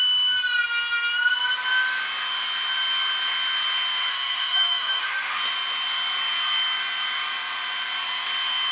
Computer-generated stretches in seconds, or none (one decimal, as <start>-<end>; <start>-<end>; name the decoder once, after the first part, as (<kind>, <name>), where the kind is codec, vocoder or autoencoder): 4.1-5.4 (autoencoder, DAC-VAE)